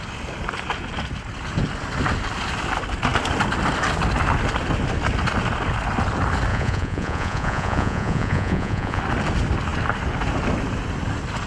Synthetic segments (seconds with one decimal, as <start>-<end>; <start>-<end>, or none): 6.5-9.0